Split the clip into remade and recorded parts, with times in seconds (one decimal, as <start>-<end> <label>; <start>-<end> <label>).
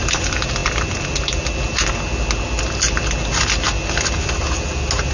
0.0-5.1 recorded